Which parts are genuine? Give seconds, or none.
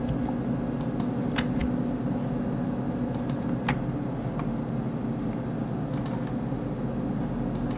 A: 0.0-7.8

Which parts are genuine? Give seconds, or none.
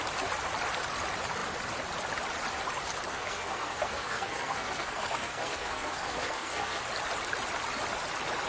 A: 0.0-3.1; 6.8-8.5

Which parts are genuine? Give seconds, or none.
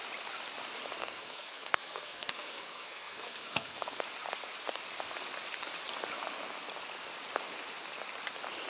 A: 0.0-1.0; 4.0-8.7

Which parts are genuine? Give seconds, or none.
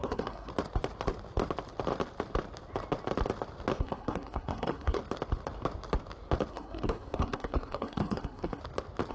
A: 0.5-3.8; 5.0-6.5; 8.6-9.1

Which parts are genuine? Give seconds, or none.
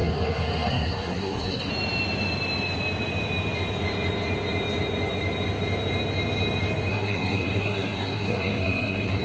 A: 1.7-6.9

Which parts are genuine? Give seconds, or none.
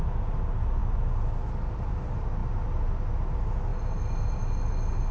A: 0.0-5.1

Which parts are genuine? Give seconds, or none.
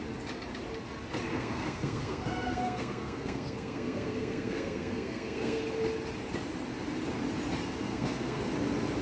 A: 0.0-1.3; 5.6-7.9; 8.4-9.0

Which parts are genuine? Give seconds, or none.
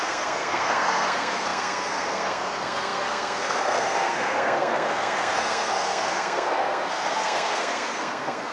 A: none